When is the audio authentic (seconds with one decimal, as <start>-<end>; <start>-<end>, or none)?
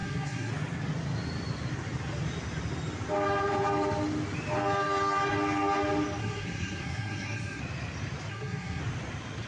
0.5-6.2; 7.6-8.3; 8.8-9.5